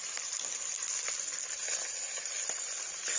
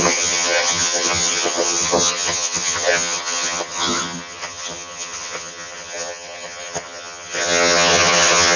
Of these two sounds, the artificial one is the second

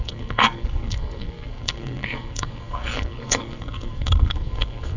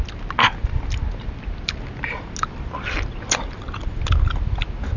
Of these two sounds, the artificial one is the first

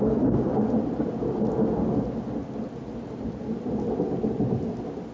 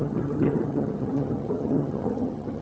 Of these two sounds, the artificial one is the second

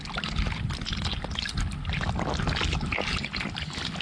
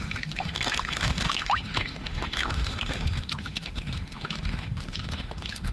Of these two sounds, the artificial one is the second